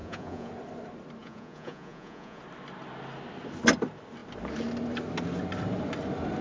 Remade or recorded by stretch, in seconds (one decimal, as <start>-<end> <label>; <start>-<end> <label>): 0.0-0.5 remade; 0.5-1.2 recorded; 1.2-2.4 remade; 2.4-6.4 recorded